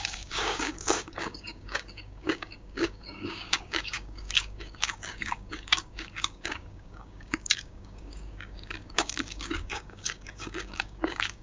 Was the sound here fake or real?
fake